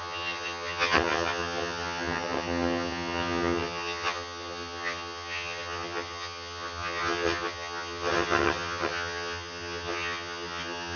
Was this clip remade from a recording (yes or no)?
yes